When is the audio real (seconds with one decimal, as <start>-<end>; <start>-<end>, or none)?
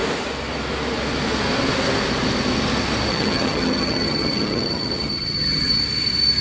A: 0.0-3.1; 5.8-6.4